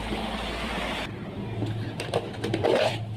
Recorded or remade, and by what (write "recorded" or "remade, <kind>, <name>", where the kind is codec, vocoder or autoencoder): remade, vocoder, BigVGAN v2